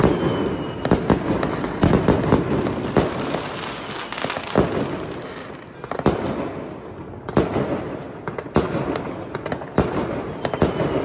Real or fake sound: real